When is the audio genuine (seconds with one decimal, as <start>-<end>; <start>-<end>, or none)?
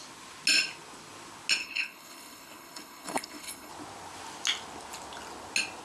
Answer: 0.0-1.6; 3.7-5.8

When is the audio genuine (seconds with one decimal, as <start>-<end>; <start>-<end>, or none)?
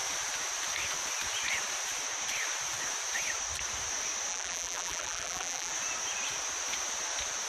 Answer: 0.0-4.3; 5.7-7.5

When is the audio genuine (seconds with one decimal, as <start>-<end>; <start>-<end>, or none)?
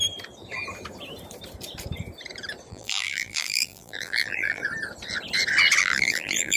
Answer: 0.0-2.7; 4.6-5.8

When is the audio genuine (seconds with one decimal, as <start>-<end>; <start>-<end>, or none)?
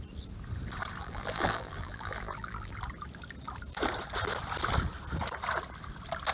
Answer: 0.0-1.0; 2.7-6.3